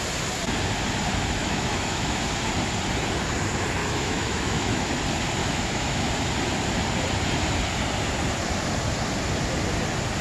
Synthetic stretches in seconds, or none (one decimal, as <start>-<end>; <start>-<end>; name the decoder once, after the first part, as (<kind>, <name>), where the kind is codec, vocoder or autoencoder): 1.4-2.2 (autoencoder, DAC-VAE); 3.8-4.9; 5.4-6.1